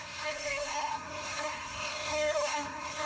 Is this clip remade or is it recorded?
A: remade